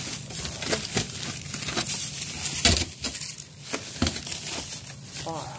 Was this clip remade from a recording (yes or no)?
no